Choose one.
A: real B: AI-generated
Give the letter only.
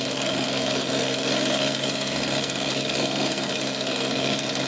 B